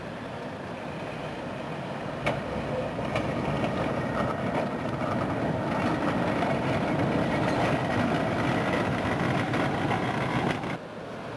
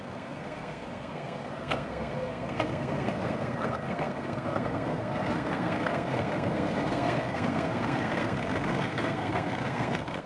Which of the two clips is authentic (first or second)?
first